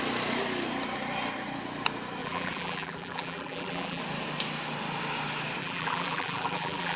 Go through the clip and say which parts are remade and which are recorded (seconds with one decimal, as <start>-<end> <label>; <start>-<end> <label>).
0.0-2.2 recorded; 2.2-4.0 remade; 4.0-5.6 recorded; 5.6-7.0 remade